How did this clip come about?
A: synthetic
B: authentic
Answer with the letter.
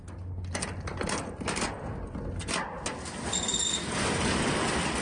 B